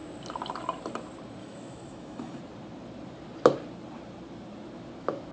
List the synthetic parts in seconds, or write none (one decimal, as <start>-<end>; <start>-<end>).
1.4-2.4